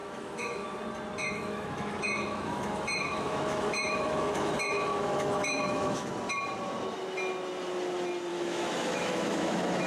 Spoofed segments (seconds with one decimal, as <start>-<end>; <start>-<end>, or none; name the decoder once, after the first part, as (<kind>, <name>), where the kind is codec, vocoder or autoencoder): 0.0-0.6 (autoencoder, DAC-VAE); 1.2-6.1; 8.3-9.9